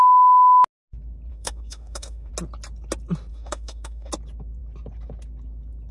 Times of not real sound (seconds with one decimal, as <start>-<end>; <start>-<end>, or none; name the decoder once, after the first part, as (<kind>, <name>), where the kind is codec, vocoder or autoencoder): 1.3-2.3 (autoencoder, DAC-VAE); 3.3-4.1